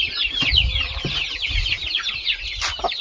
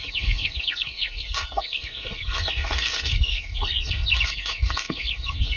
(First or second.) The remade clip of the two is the second